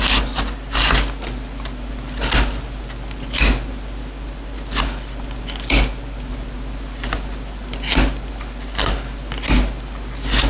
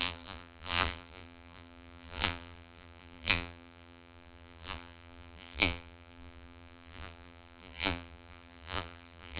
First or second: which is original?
first